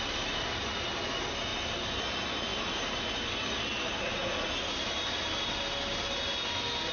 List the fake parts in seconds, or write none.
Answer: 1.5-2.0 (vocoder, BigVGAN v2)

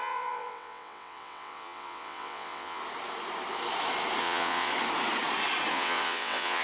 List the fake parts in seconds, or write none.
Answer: 0.0-2.8 (vocoder, WaveNeXt); 4.2-4.7; 5.7-6.6

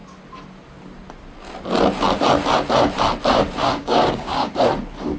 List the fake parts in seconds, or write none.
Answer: 3.8-4.5 (codec, DAC)

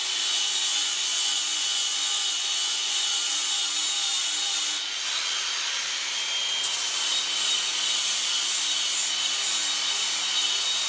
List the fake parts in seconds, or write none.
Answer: 0.7-3.2 (vocoder, Vocos)

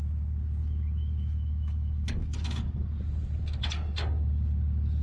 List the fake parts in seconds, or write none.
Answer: 0.6-2.6 (autoencoder, DAC-VAE)

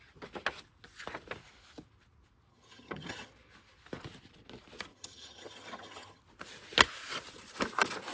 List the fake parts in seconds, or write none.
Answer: 2.5-3.3 (vocoder, HiFi-GAN); 4.9-6.2

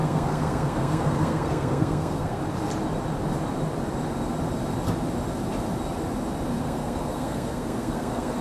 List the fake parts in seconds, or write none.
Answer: 0.0-2.4 (codec, SNAC); 6.6-8.4